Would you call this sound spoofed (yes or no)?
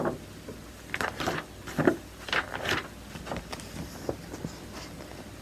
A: no